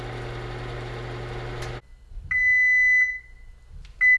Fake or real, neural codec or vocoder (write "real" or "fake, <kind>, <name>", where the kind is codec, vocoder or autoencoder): real